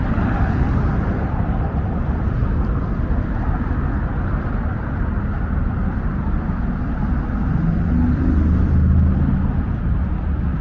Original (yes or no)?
yes